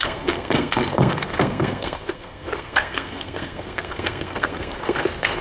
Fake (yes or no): yes